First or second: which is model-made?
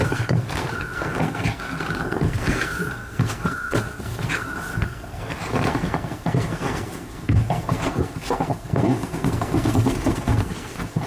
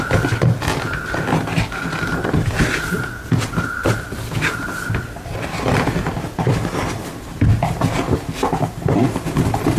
first